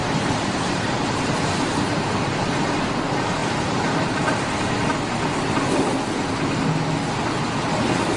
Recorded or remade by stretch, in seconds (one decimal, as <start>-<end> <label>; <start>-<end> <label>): 0.0-2.0 remade; 2.0-3.4 recorded; 3.4-4.7 remade; 4.7-8.2 recorded